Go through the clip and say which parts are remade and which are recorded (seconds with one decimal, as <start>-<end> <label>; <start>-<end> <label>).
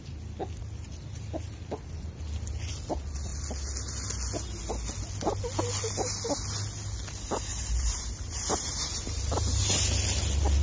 0.0-7.5 recorded; 7.5-9.6 remade; 9.6-10.6 recorded